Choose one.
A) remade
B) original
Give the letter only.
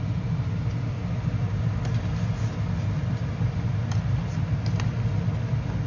B